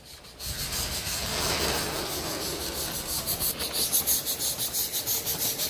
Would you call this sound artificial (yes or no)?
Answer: no